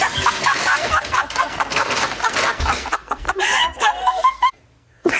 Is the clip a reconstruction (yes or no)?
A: yes